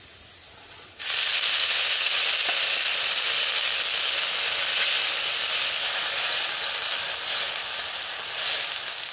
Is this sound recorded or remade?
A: recorded